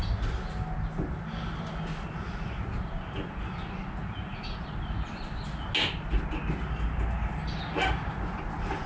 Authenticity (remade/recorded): recorded